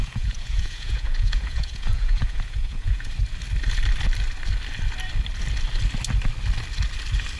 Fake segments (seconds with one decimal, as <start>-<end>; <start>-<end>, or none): 0.0-3.1